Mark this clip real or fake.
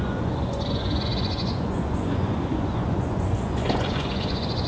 fake